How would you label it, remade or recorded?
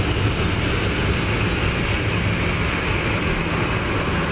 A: recorded